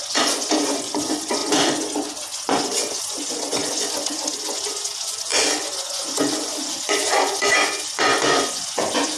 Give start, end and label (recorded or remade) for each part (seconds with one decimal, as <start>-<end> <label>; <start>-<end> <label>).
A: 0.0-9.2 remade